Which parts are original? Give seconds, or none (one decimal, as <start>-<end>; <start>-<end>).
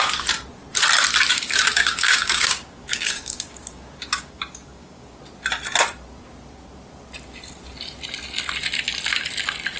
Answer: 0.0-1.3; 5.2-9.8